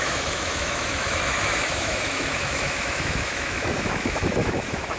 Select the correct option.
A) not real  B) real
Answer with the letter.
A